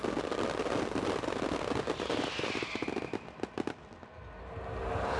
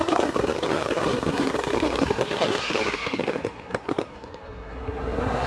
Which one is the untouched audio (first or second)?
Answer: first